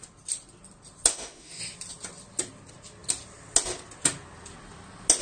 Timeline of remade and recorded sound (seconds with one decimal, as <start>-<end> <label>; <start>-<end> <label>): 0.0-1.1 recorded; 1.1-1.6 remade; 1.6-5.2 recorded